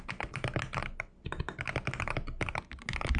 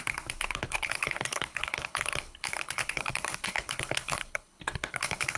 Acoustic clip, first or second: first